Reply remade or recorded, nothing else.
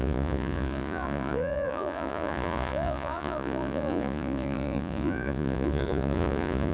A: remade